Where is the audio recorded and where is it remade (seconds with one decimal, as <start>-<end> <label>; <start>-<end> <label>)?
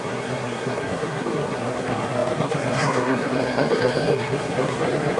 0.0-5.2 remade